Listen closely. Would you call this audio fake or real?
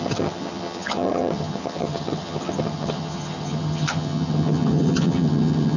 fake